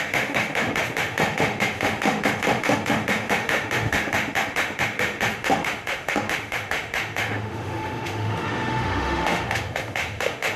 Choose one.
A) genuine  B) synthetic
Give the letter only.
B